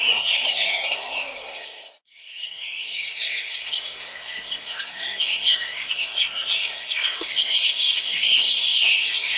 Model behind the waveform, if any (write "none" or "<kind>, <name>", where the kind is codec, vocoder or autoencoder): codec, SNAC